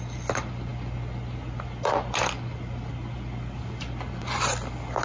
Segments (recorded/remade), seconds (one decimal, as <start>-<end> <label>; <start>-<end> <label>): 0.0-5.0 recorded